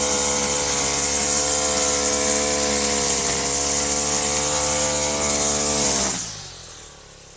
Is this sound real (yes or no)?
yes